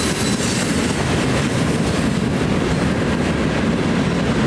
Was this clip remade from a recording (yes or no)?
no